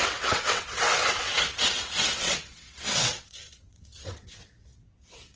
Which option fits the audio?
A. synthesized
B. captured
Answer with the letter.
A